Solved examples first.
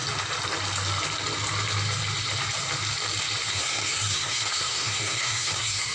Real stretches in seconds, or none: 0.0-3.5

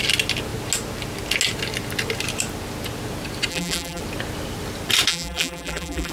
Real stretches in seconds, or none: 0.0-3.5; 4.0-5.1

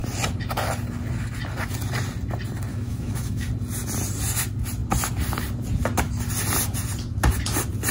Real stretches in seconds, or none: 0.0-2.7; 3.5-7.9